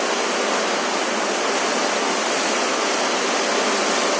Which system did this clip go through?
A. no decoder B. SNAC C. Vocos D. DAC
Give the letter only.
A